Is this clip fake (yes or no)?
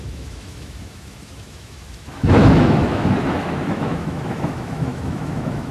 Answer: yes